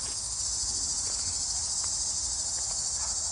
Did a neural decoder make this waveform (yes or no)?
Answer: no